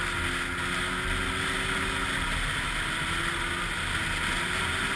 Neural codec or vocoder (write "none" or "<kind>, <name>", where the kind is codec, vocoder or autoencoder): none